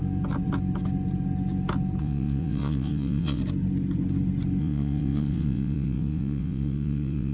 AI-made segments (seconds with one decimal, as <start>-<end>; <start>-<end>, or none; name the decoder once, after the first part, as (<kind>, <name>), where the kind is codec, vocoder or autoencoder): 2.0-3.4 (vocoder, WaveNeXt); 4.6-7.3